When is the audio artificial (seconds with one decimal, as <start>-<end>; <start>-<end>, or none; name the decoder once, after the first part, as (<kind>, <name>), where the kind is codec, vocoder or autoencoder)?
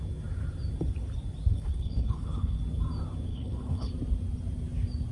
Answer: 1.5-2.6 (codec, HILCodec); 3.3-3.9